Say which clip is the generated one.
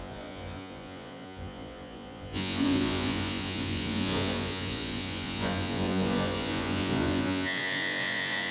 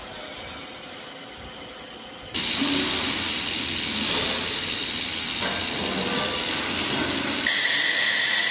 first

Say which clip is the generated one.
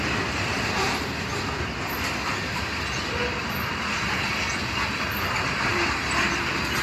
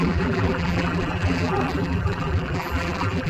second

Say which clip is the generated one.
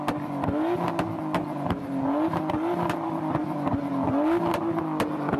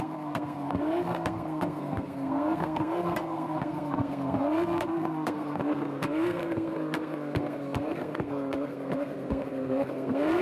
second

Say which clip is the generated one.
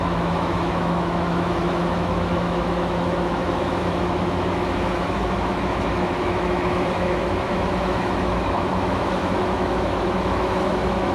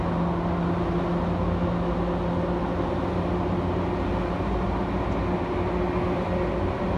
first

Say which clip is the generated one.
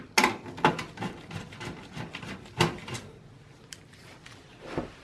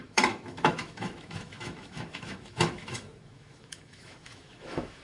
second